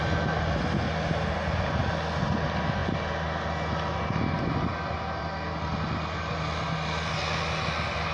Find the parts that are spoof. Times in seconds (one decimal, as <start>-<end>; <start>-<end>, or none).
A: none